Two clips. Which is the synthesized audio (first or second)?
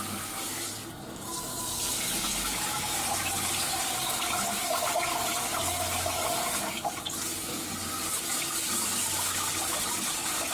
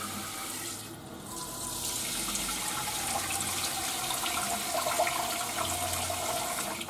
first